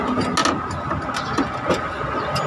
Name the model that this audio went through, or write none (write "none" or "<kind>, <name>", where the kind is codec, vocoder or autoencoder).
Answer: none